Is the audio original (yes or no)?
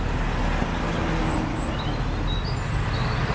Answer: yes